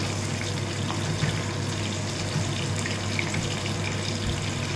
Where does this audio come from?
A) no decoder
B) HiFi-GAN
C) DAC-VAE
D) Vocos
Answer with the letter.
A